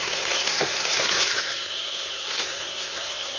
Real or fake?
fake